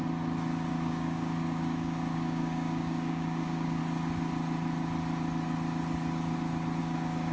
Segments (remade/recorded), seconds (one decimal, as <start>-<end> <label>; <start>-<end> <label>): 0.0-0.7 recorded; 0.7-3.8 remade; 3.8-6.8 recorded; 6.8-7.3 remade